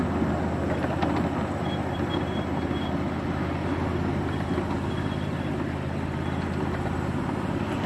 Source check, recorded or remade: recorded